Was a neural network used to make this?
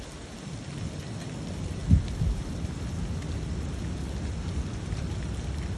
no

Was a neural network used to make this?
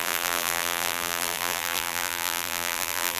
yes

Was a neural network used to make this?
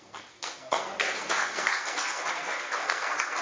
yes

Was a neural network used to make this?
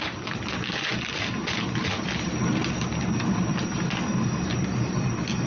no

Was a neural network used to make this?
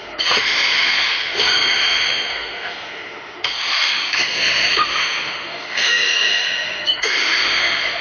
yes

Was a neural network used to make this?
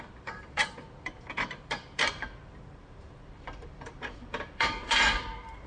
yes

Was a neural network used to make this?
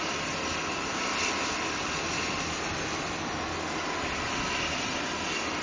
no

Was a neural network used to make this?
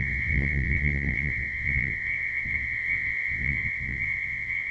yes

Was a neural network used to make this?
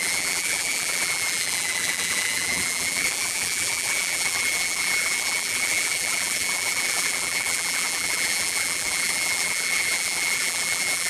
yes